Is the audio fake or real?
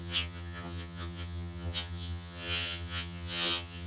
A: fake